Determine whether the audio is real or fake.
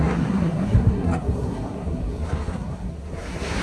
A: fake